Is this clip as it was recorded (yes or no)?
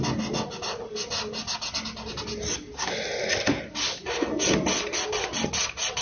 yes